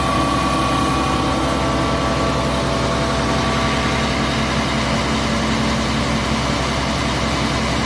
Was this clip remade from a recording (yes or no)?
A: no